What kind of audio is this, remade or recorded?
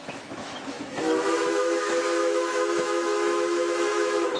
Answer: remade